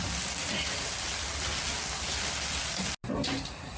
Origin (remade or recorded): recorded